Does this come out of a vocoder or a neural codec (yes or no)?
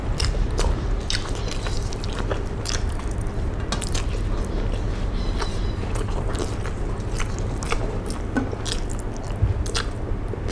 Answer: no